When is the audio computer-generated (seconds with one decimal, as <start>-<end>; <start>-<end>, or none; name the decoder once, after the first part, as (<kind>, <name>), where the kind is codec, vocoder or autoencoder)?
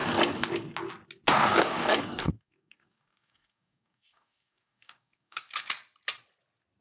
1.4-5.5 (codec, DAC)